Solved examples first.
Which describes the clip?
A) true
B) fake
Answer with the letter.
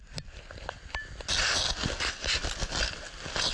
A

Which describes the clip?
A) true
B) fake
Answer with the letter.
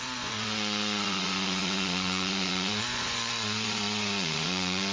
B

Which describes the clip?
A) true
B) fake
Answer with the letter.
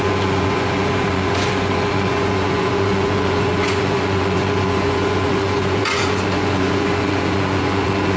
B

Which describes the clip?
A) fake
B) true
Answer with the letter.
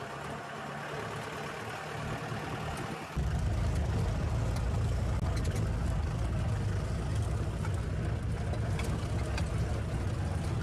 B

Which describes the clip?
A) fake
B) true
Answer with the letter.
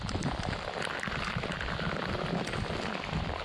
B